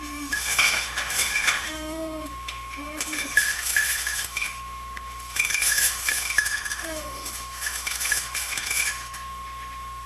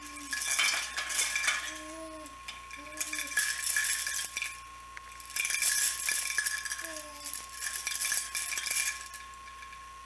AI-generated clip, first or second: first